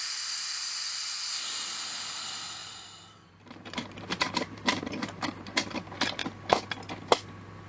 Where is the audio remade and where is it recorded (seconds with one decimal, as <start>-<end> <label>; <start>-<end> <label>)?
0.0-2.6 recorded; 2.6-5.6 remade; 5.6-7.7 recorded